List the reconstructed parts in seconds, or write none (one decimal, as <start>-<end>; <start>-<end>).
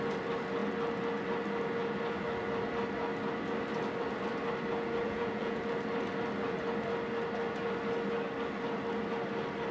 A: 5.0-5.6